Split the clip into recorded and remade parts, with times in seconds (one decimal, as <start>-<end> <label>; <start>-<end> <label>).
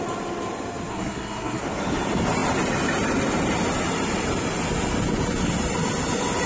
0.0-0.9 recorded; 0.9-1.6 remade; 1.6-6.5 recorded